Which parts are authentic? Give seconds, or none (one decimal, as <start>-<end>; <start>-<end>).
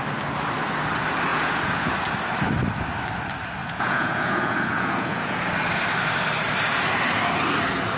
0.0-1.3; 1.9-3.6; 5.4-8.0